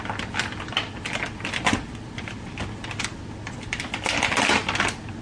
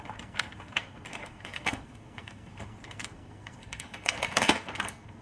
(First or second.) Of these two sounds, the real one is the first